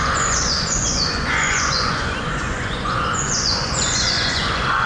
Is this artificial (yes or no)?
yes